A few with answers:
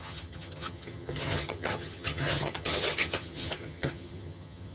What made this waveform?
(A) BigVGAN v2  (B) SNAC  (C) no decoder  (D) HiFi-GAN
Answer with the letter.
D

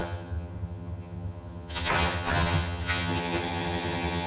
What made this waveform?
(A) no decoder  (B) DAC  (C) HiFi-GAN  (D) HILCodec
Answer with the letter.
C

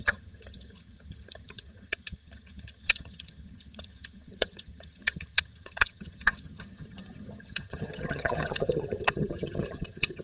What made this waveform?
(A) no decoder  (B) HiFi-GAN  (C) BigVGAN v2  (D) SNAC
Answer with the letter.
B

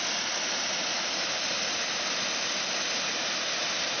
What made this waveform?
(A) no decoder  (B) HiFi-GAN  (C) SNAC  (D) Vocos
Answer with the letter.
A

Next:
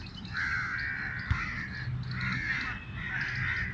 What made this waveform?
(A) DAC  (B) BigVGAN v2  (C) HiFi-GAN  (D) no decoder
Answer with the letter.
D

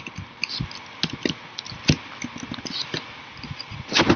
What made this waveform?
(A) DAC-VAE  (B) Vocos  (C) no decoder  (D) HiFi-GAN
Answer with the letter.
C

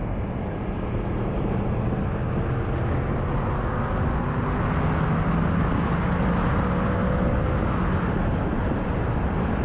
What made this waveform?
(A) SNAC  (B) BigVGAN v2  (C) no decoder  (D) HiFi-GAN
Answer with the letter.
C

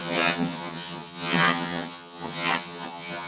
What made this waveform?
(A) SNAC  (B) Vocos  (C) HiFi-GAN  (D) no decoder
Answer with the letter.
C